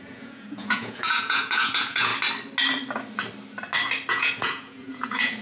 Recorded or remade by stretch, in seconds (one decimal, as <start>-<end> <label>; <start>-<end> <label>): 0.0-2.1 remade; 2.1-4.1 recorded; 4.1-5.4 remade